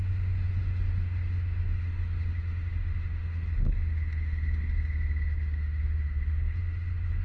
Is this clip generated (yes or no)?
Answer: yes